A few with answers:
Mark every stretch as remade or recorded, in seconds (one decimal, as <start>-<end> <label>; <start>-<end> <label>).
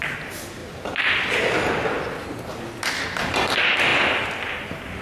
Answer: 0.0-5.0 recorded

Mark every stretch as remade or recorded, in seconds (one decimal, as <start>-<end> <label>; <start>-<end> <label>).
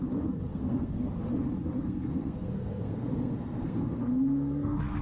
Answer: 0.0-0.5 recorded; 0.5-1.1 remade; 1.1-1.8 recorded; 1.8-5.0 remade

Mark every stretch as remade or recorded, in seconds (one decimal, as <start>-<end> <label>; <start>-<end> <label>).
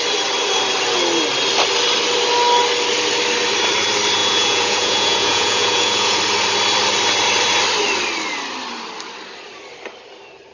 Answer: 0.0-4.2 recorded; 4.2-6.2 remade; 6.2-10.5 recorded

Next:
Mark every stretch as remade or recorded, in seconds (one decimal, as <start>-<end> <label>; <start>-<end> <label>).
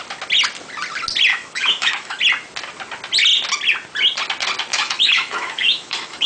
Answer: 0.0-1.3 recorded; 1.3-2.2 remade; 2.2-4.7 recorded; 4.7-6.3 remade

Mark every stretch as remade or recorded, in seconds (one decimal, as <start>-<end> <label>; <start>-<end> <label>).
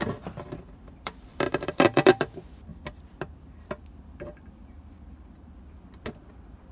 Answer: 0.0-2.7 remade; 2.7-6.3 recorded; 6.3-6.7 remade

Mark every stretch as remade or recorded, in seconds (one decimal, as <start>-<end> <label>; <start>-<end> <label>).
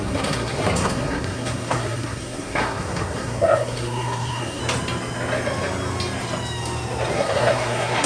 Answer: 0.0-4.6 remade; 4.6-7.1 recorded; 7.1-8.1 remade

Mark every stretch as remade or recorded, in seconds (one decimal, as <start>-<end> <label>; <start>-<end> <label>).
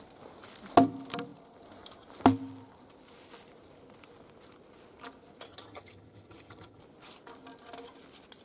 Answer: 0.0-5.5 recorded; 5.5-6.8 remade; 6.8-8.4 recorded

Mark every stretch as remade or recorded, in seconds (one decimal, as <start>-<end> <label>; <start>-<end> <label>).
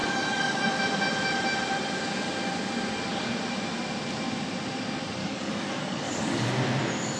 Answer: 0.0-0.7 remade; 0.7-5.2 recorded; 5.2-6.5 remade; 6.5-7.2 recorded